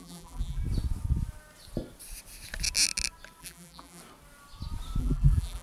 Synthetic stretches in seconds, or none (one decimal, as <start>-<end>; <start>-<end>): 0.0-0.6; 3.4-4.0; 5.0-5.6